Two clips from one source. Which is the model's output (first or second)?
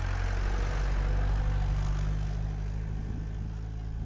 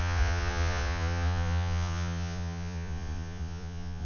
second